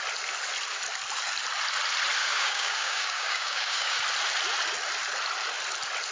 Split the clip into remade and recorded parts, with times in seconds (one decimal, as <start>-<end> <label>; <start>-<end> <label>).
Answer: 0.0-2.2 recorded; 2.2-4.0 remade; 4.0-6.1 recorded